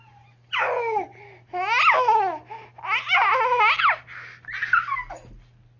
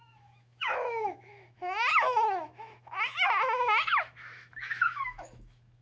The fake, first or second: second